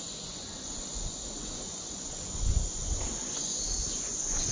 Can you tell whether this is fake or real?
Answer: fake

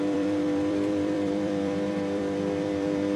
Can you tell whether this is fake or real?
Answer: fake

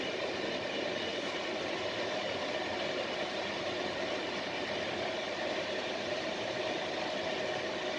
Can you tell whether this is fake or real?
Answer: real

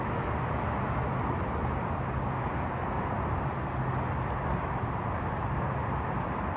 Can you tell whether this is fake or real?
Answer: real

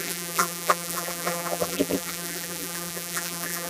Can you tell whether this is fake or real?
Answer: fake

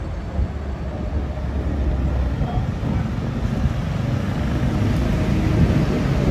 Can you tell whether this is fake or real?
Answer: real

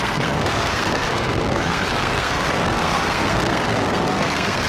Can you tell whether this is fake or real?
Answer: fake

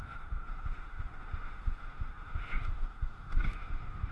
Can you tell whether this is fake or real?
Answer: fake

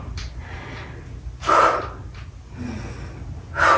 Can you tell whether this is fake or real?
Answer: real